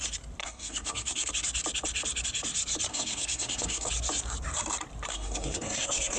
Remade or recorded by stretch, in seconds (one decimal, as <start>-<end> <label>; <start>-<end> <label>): 0.0-0.4 recorded; 0.4-1.3 remade; 1.3-2.9 recorded; 2.9-3.9 remade; 3.9-5.1 recorded; 5.1-6.2 remade